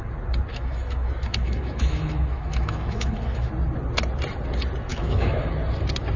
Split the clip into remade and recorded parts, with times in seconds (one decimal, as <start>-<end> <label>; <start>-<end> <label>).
0.0-0.5 recorded; 0.5-3.5 remade; 3.5-4.9 recorded; 4.9-5.5 remade; 5.5-6.2 recorded